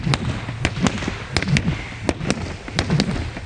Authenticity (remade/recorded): recorded